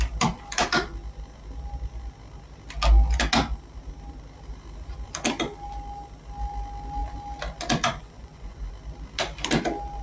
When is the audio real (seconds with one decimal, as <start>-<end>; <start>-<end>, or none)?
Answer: 0.0-8.0; 8.7-10.0